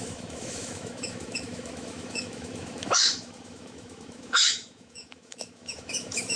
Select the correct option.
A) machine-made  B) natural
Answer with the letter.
A